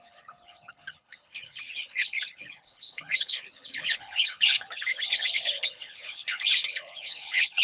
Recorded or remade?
remade